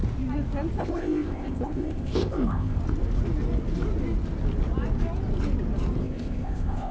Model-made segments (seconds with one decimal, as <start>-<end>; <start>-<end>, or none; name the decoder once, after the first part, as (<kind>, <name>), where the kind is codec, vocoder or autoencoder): 0.8-2.8 (codec, ZipCodec); 6.0-6.9